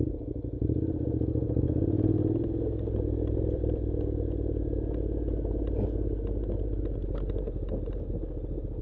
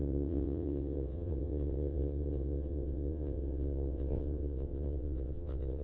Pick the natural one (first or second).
first